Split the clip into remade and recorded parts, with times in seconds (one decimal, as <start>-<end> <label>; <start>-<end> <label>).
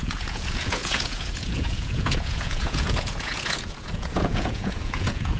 0.0-5.4 remade